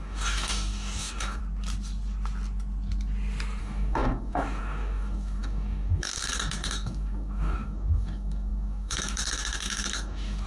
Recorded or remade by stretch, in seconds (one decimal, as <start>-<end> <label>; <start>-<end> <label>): 0.0-1.4 remade; 1.4-3.6 recorded; 3.6-10.5 remade